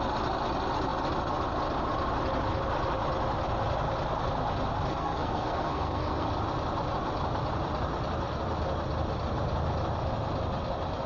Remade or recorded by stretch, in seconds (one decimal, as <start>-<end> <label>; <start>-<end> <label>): 0.0-4.9 recorded; 4.9-6.3 remade; 6.3-11.1 recorded